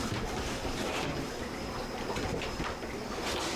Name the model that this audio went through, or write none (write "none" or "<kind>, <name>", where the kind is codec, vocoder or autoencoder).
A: none